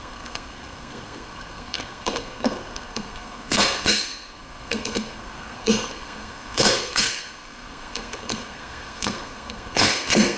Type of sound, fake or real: fake